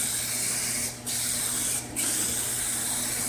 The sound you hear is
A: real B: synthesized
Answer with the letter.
A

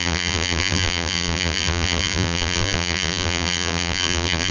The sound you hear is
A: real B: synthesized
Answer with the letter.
B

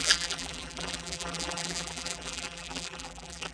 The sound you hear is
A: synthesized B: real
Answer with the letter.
A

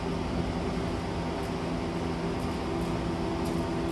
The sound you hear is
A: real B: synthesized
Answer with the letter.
A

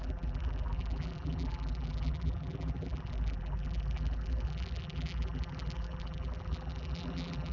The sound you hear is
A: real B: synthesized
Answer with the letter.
B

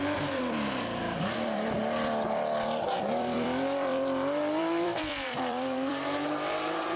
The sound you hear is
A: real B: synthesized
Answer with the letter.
B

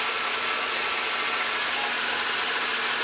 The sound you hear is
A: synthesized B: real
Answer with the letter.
A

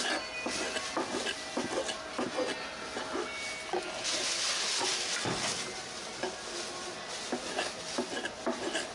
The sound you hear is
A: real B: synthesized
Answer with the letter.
A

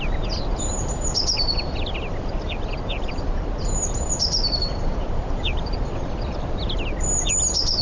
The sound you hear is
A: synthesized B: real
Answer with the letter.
A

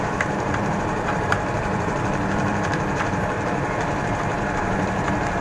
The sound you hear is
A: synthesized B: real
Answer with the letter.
A